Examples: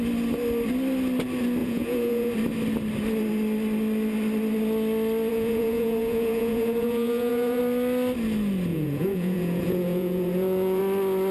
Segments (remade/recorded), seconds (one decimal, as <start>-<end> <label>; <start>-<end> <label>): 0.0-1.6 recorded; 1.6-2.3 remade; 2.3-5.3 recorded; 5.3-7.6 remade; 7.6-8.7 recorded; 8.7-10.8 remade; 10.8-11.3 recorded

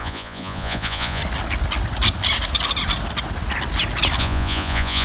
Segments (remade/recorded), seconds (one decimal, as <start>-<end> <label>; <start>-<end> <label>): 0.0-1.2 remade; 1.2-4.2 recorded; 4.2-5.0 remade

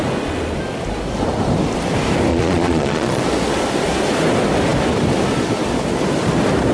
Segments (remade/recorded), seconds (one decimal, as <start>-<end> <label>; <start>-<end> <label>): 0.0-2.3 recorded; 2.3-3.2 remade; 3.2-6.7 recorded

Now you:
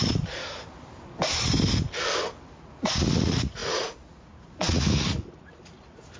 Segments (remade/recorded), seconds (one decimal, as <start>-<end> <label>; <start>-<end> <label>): 0.0-0.4 remade; 0.4-2.5 recorded; 2.5-6.2 remade

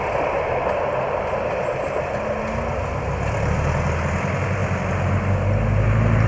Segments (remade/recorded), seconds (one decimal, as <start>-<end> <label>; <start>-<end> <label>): 0.0-6.3 recorded

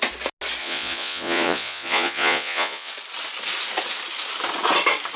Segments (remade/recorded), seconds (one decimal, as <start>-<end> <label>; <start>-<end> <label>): 0.0-0.6 recorded; 0.6-2.9 remade; 2.9-5.2 recorded

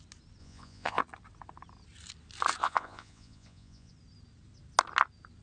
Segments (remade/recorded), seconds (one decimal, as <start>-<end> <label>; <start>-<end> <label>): 0.0-0.4 recorded; 0.4-1.0 remade; 1.0-2.6 recorded; 2.6-3.9 remade; 3.9-5.4 recorded

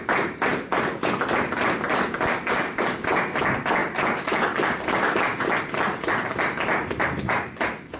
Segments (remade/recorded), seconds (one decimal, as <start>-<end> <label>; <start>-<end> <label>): 0.0-8.0 recorded